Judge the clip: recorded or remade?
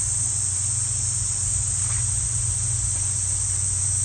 recorded